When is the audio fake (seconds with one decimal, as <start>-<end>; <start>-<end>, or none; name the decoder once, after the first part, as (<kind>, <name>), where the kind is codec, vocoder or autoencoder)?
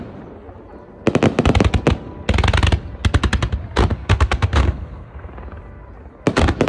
3.9-5.3 (codec, SNAC)